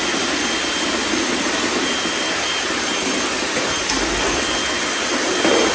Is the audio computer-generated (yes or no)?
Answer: no